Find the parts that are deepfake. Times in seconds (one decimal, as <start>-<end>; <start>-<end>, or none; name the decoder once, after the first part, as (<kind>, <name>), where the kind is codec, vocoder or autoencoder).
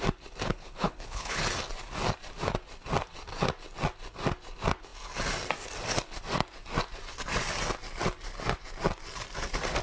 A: 0.5-1.4 (codec, HILCodec)